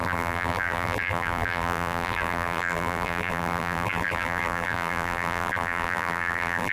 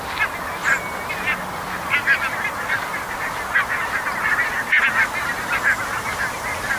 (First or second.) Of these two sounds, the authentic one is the second